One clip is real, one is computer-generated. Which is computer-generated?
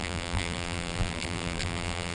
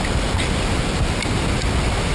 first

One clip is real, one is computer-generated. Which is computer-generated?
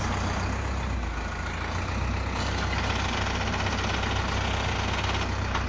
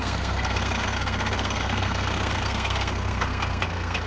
second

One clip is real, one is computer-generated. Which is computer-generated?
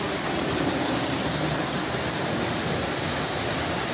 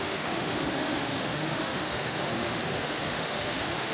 second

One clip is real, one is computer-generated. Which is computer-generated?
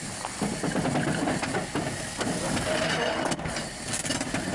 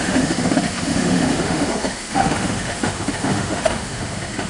second